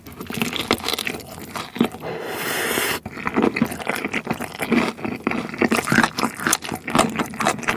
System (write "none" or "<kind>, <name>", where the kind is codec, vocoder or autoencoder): none